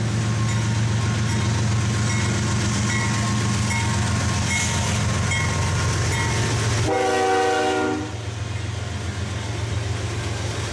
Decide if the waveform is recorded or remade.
recorded